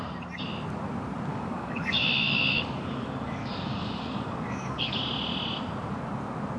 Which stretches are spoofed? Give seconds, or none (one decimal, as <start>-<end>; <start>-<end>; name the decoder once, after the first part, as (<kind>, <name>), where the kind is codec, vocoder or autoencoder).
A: 1.3-5.0 (codec, DAC)